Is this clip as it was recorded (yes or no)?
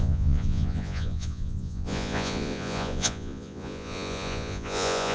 no